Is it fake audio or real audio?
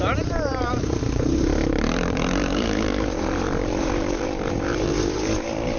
fake